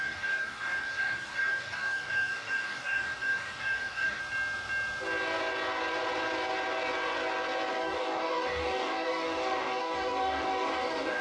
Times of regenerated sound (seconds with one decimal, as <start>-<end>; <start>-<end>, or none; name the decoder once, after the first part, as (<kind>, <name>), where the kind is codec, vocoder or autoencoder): 0.0-4.2 (codec, DAC); 7.7-11.2